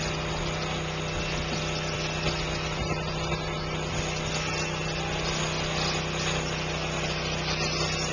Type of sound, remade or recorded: recorded